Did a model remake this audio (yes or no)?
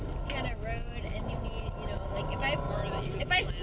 no